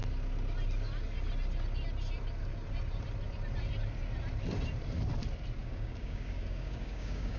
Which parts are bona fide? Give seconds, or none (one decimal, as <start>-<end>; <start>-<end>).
0.0-5.6